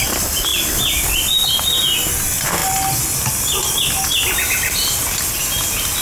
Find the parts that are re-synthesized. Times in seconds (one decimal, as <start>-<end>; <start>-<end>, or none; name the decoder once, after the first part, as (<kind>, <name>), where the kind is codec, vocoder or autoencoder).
none